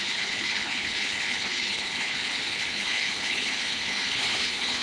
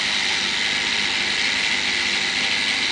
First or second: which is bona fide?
second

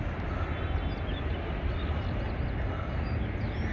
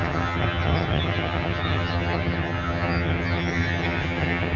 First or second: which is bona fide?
first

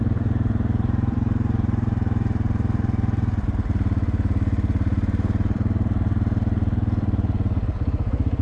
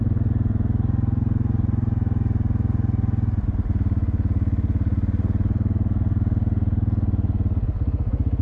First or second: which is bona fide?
second